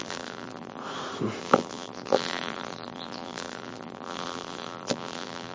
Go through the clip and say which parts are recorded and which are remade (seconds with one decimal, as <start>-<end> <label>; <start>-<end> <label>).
0.0-0.8 remade; 0.8-1.4 recorded; 1.4-5.5 remade